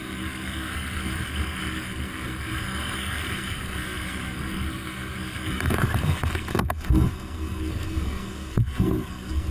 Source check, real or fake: fake